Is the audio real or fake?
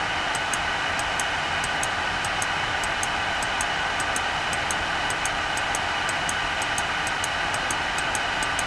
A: real